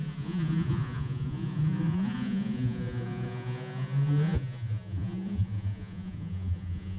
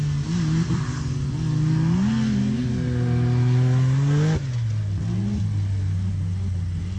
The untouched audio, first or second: second